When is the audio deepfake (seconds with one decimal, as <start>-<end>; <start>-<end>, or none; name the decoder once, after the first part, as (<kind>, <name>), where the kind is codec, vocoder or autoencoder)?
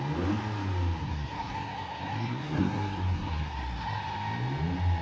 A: 1.0-4.0 (codec, SNAC)